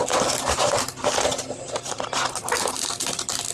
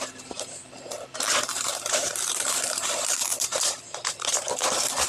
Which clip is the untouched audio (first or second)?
first